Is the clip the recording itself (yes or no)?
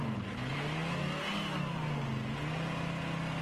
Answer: yes